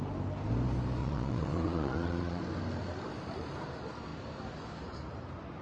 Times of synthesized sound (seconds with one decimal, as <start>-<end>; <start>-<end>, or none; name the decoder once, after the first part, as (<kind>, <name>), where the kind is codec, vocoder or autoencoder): 1.0-2.4 (vocoder, Vocos)